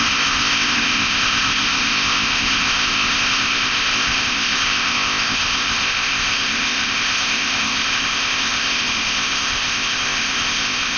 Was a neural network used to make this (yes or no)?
yes